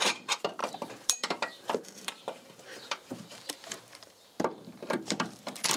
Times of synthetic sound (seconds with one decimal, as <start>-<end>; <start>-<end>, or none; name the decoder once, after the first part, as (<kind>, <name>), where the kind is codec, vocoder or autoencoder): 0.0-5.8 (vocoder, BigVGAN v2)